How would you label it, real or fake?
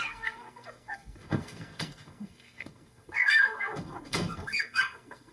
fake